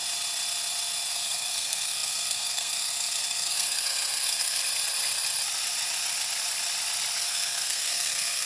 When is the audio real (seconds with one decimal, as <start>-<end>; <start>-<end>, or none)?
0.0-1.1; 4.6-7.2